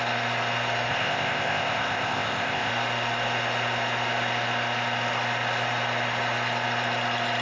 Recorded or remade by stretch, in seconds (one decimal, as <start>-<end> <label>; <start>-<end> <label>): 0.0-0.9 recorded; 0.9-2.7 remade; 2.7-7.4 recorded